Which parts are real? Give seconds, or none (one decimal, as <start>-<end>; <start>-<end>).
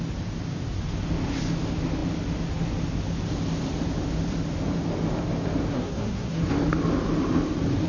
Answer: 0.0-5.7; 6.5-7.9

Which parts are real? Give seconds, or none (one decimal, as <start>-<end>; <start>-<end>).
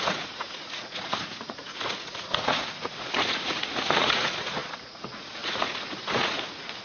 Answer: none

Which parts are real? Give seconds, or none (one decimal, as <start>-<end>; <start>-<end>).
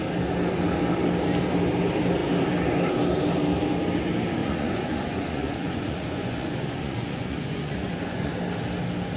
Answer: 0.0-4.4; 8.3-9.2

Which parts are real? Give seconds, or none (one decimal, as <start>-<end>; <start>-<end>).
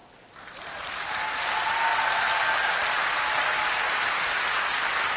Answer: 0.0-5.2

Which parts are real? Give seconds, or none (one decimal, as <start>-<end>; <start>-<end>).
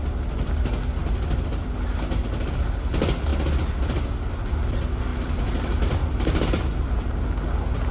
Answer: 0.0-1.0; 1.8-5.1; 7.0-7.9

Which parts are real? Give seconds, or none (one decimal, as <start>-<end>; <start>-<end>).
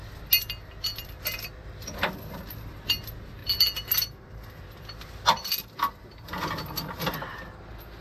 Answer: 0.0-8.0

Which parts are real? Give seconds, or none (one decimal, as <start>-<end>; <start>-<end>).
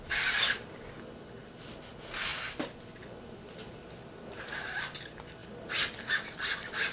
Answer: 0.0-6.9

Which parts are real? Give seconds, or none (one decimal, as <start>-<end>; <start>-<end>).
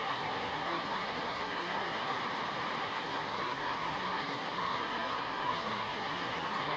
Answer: 2.2-2.8